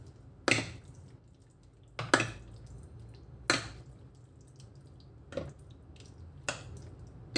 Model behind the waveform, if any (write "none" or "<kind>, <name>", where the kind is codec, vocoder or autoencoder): none